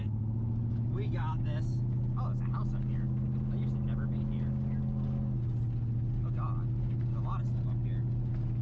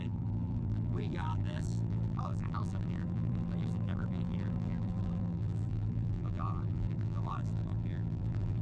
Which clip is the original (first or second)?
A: first